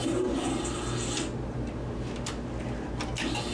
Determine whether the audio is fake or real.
real